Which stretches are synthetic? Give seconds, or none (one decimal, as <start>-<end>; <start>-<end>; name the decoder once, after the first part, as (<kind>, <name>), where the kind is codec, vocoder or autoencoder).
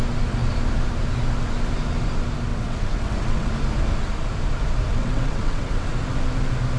2.5-3.5 (vocoder, WaveNeXt); 4.9-5.9